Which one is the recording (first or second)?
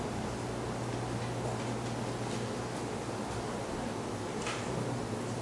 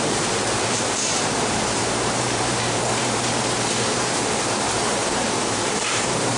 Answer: first